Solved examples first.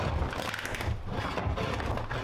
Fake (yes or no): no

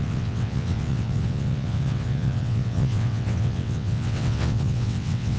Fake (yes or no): yes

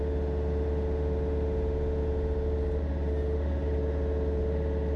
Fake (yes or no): no